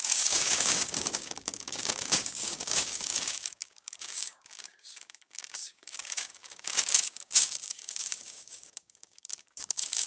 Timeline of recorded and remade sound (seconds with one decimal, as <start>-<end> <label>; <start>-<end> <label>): 0.0-10.1 remade